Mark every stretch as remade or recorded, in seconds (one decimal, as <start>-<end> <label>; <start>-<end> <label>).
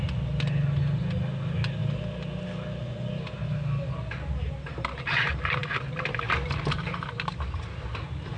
0.0-8.4 recorded